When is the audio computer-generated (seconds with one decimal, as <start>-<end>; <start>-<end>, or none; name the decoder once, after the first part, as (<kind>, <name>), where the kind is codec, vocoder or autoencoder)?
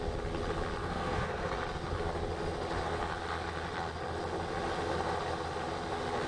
0.8-1.5 (codec, SNAC)